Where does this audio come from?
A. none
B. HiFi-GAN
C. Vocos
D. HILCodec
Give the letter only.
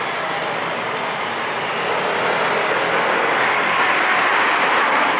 A